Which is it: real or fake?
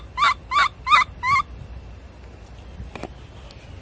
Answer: real